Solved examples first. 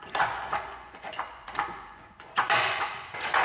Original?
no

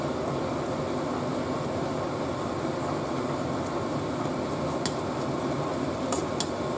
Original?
yes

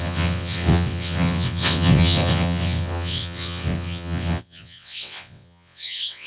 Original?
no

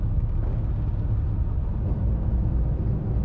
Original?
yes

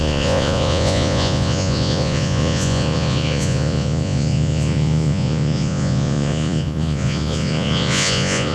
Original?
no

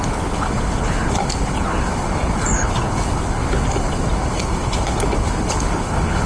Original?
no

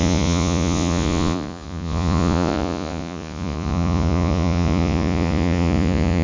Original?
no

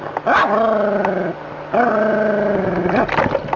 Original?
yes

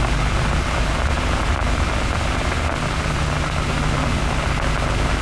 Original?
yes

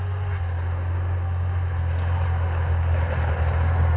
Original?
yes